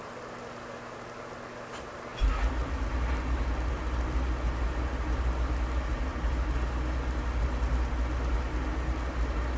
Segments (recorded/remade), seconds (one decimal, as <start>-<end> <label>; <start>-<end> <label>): 0.0-9.6 recorded